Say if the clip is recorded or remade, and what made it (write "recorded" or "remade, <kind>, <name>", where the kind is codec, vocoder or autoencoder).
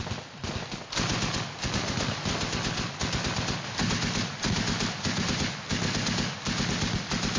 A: recorded